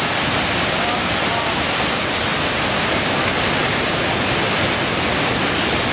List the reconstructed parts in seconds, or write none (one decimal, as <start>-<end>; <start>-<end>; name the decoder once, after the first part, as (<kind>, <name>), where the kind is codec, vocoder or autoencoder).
none